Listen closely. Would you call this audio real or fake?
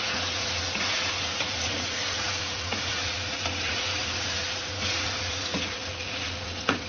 fake